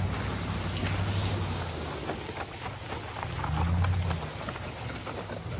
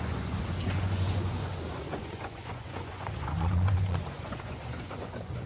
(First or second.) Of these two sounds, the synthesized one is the second